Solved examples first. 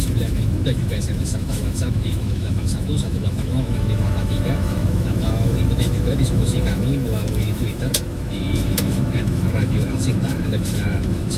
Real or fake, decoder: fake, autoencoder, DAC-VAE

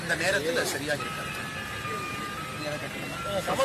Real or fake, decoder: real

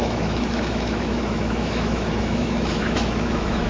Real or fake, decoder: fake, autoencoder, DAC-VAE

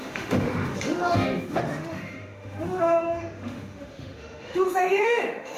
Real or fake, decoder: fake, autoencoder, DAC-VAE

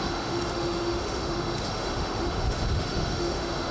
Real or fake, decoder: fake, autoencoder, DAC-VAE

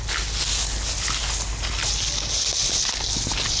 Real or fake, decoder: real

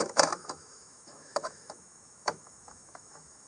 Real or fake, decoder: fake, autoencoder, DAC-VAE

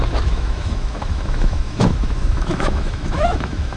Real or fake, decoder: fake, autoencoder, DAC-VAE